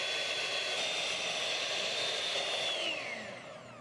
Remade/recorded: recorded